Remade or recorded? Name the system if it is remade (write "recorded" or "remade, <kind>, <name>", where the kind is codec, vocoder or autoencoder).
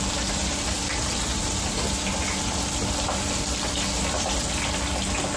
recorded